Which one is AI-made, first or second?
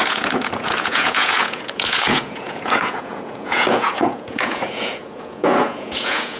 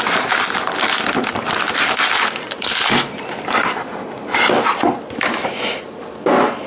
first